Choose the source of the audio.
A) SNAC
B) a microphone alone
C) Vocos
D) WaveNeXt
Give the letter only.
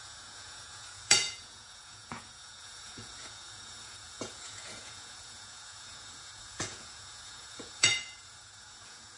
C